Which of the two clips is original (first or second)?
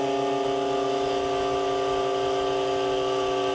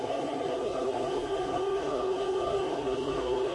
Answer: first